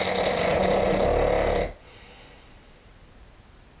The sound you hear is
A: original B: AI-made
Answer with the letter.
A